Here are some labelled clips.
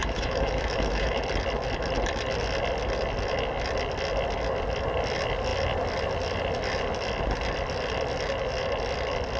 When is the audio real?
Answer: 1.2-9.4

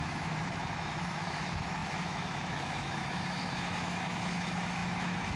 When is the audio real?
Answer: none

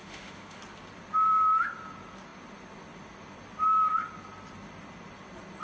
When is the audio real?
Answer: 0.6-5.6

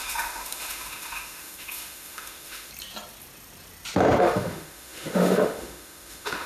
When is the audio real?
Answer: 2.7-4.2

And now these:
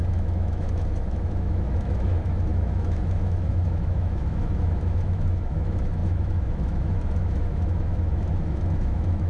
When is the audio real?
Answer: none

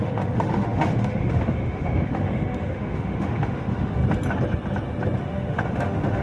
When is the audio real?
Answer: 4.0-5.2

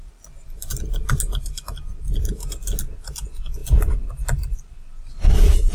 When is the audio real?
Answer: 0.0-5.7